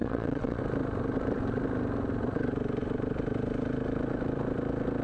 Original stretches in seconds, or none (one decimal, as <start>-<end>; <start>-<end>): 0.6-5.0